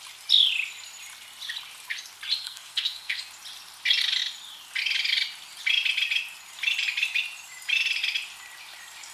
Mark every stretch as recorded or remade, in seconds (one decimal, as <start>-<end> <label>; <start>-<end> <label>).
0.0-2.4 recorded; 2.4-3.2 remade; 3.2-9.1 recorded